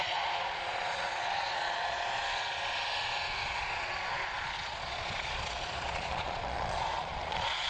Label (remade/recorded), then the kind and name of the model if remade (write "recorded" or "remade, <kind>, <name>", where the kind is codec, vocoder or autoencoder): remade, vocoder, Vocos